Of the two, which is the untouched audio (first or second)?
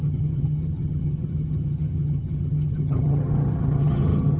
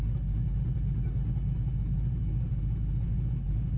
second